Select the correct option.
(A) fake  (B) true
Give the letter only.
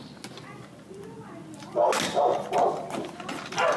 B